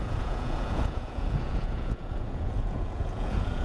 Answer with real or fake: fake